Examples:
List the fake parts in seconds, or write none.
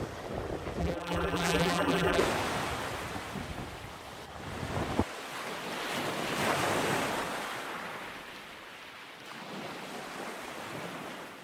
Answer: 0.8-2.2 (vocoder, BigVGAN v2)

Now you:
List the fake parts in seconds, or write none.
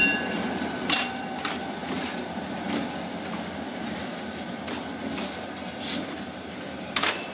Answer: 0.0-1.8 (vocoder, BigVGAN v2); 6.2-7.3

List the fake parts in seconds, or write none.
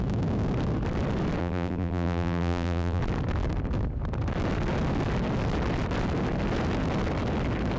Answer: 1.4-3.0 (vocoder, BigVGAN v2)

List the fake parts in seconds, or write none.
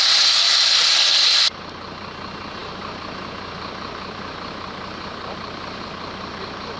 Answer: 0.0-6.8 (vocoder, BigVGAN v2)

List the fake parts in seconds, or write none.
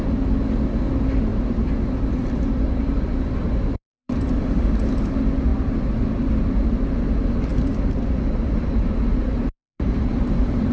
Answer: 1.3-5.1 (vocoder, BigVGAN v2); 7.5-10.7